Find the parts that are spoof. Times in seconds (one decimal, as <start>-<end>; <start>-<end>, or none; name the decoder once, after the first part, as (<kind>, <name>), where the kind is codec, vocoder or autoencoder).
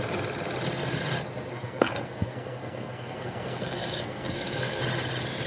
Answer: 1.5-4.8 (codec, SNAC)